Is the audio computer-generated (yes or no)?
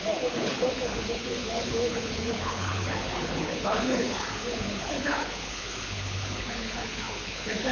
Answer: yes